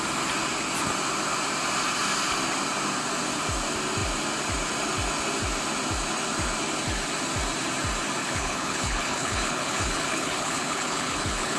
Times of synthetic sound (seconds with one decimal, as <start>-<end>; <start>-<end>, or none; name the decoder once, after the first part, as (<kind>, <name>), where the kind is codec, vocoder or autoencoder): 8.2-11.6 (codec, HILCodec)